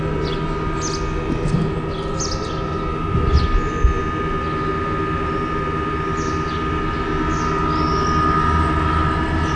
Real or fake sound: real